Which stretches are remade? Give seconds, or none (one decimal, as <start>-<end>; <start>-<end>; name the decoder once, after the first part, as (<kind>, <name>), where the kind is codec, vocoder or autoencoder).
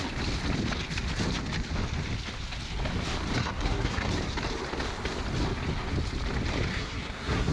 3.4-4.1 (codec, SNAC); 6.7-7.5